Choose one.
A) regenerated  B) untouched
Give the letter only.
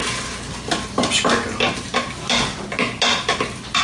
B